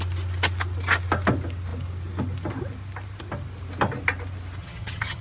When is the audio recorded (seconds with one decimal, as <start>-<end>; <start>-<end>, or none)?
0.0-4.6